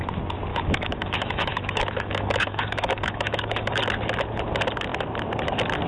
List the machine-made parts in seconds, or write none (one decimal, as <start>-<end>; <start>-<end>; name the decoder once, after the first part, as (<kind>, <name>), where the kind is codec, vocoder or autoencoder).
0.5-3.8 (autoencoder, DAC-VAE)